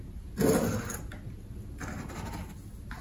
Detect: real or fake real